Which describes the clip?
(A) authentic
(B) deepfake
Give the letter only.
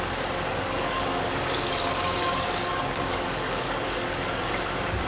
B